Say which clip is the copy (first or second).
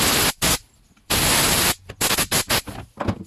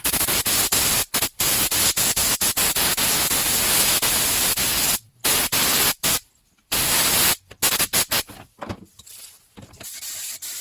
second